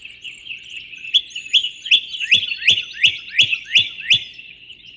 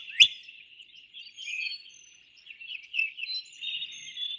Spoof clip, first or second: second